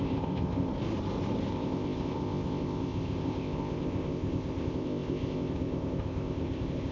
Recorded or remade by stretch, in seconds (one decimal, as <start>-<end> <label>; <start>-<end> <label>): 0.0-0.7 remade; 0.7-1.5 recorded; 1.5-6.9 remade